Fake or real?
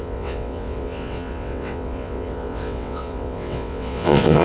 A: fake